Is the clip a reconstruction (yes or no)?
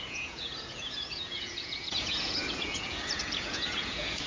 yes